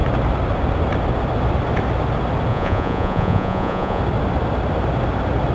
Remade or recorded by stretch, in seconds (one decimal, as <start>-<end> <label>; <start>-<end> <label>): 0.0-2.5 recorded; 2.5-4.0 remade; 4.0-5.5 recorded